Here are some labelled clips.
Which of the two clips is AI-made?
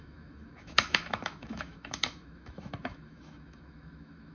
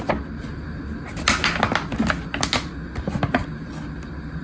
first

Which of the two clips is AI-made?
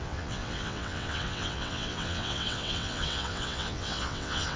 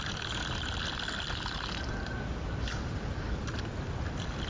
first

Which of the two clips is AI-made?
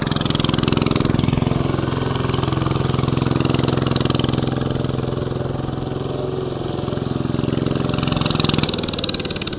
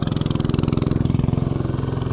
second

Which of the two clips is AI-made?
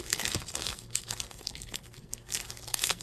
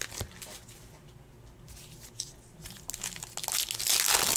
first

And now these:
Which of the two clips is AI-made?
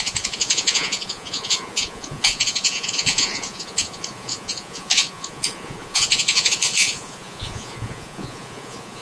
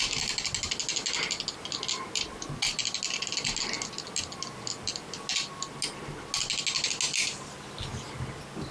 first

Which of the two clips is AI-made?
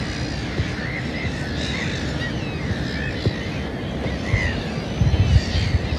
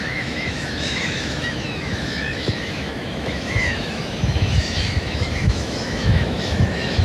second